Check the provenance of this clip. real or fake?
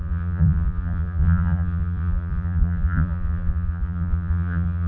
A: fake